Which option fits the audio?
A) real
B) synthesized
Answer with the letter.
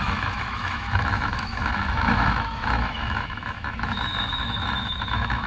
B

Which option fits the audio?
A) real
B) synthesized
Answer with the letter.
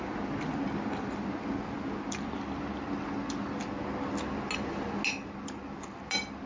A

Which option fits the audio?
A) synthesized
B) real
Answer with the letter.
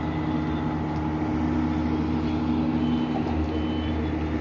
B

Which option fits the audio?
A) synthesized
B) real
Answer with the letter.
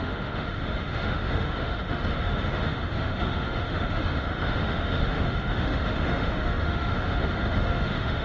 A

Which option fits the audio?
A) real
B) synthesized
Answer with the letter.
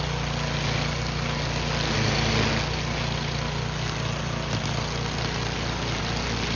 A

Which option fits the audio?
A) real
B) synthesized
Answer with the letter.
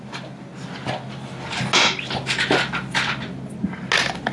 A